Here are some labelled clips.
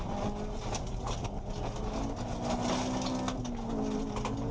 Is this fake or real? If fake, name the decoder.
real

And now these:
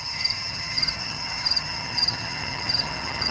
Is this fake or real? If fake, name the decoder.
fake, vocoder, HiFi-GAN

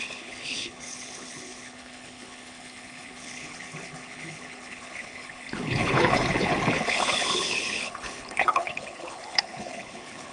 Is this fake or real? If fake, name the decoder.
fake, codec, HILCodec